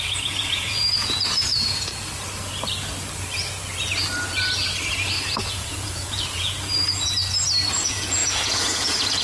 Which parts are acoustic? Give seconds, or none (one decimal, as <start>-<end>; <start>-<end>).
1.9-5.4; 7.2-7.7